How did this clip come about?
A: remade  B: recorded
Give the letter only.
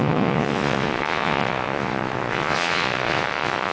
A